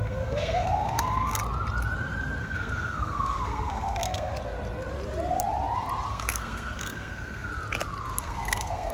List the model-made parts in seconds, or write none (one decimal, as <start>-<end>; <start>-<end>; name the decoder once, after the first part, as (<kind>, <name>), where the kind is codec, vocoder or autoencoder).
0.0-1.4 (codec, SNAC); 2.4-4.3; 6.1-7.5; 8.2-8.9